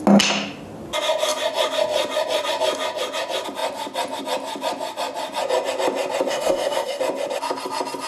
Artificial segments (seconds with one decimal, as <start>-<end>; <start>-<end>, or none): 6.3-7.0